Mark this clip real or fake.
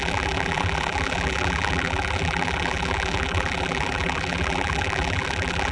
fake